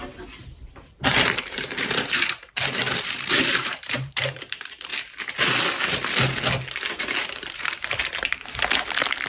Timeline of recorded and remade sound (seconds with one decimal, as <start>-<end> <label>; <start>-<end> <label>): 0.0-4.9 remade; 4.9-6.9 recorded; 6.9-8.0 remade; 8.0-9.3 recorded